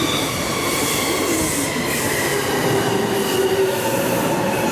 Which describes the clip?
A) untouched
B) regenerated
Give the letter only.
A